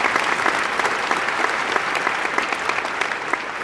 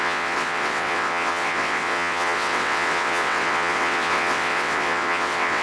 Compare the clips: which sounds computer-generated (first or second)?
second